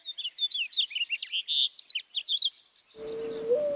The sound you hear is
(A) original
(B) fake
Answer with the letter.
A